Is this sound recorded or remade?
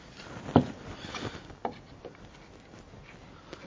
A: recorded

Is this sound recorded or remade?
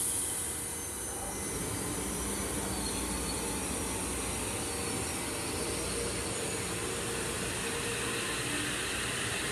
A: recorded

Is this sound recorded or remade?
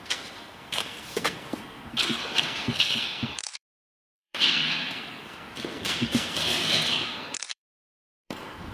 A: remade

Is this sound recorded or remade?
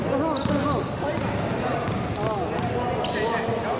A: recorded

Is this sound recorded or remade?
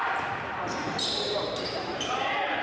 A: remade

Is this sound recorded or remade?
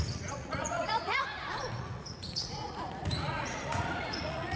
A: remade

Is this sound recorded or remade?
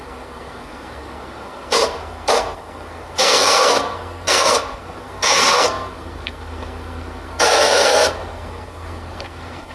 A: remade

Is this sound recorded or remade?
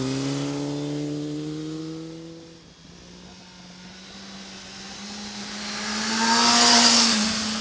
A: recorded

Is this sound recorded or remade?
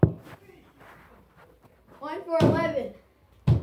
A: recorded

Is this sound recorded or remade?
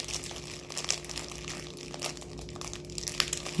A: recorded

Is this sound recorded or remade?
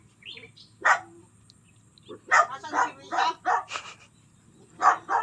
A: recorded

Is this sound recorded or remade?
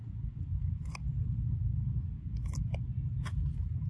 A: recorded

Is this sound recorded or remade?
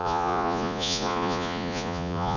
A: remade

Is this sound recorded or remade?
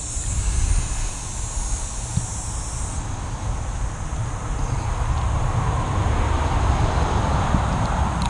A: recorded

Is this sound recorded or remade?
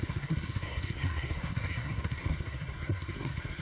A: remade